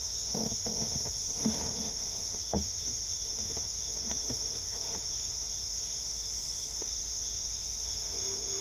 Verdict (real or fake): fake